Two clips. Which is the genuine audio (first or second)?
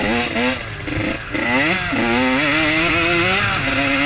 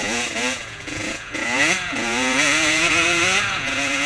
first